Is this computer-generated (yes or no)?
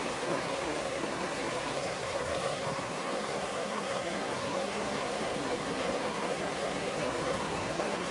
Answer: yes